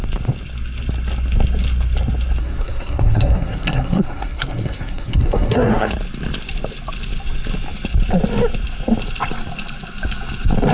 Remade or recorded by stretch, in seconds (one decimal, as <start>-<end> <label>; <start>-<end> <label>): 0.0-2.4 recorded; 2.4-5.9 remade; 5.9-10.7 recorded